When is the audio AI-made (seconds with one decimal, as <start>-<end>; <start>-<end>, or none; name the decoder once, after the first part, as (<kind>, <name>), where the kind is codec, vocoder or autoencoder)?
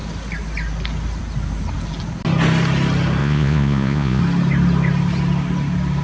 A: 3.2-4.2 (vocoder, Vocos)